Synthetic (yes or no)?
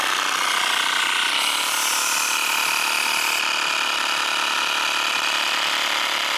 no